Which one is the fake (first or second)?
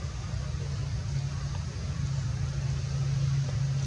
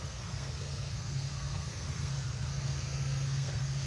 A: second